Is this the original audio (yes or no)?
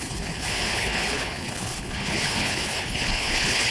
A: no